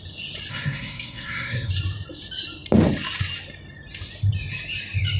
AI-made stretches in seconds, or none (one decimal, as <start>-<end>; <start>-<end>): 0.5-1.7